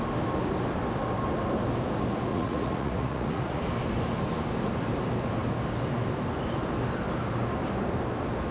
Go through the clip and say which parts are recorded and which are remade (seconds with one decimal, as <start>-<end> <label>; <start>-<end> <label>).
0.0-2.3 recorded; 2.3-3.6 remade; 3.6-8.5 recorded